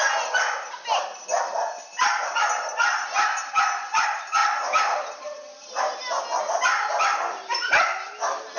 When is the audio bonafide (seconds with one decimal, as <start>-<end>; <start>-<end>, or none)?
0.0-8.6